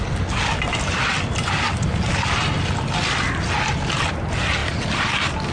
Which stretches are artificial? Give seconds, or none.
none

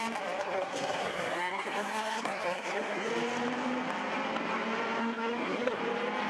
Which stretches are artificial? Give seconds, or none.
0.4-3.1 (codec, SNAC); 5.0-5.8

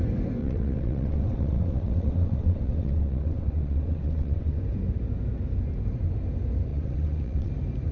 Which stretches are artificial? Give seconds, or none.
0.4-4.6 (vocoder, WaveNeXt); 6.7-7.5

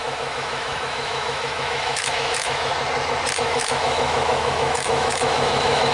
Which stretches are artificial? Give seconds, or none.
0.0-2.7 (autoencoder, DAC-VAE); 3.4-5.9

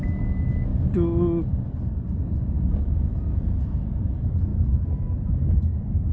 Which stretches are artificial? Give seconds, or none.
none